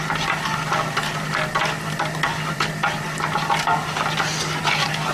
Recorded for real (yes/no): yes